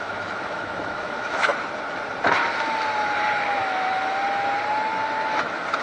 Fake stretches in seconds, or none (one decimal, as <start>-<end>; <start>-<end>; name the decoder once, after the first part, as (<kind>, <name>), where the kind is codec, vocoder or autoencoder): 0.0-1.5 (autoencoder, DAC-VAE); 3.5-3.9